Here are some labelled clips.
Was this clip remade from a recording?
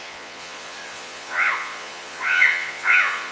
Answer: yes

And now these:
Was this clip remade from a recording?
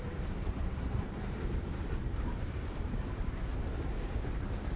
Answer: yes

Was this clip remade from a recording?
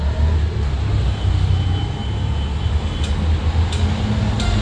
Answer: no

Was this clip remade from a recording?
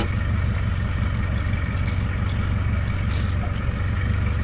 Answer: no